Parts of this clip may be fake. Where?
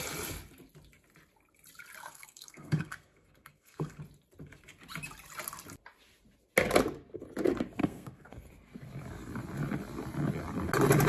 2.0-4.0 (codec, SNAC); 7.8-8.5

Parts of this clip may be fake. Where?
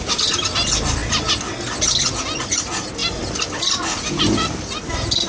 none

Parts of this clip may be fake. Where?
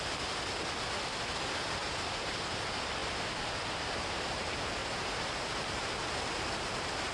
1.8-2.6 (vocoder, BigVGAN v2); 4.8-5.8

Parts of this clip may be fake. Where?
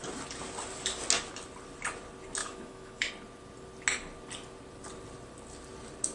2.4-3.1 (autoencoder, DAC-VAE)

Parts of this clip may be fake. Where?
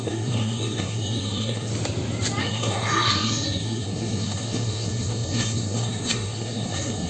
0.0-1.7 (codec, SNAC); 2.4-7.1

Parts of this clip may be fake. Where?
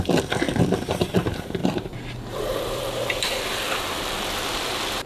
0.0-5.1 (vocoder, BigVGAN v2)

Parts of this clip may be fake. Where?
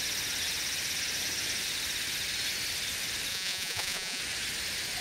3.3-4.2 (vocoder, Vocos)